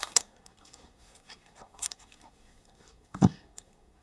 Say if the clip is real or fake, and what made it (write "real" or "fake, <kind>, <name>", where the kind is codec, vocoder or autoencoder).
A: fake, codec, SNAC